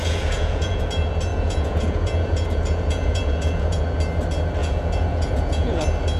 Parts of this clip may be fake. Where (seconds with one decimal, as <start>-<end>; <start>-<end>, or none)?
0.0-0.9; 1.3-3.8; 4.6-5.8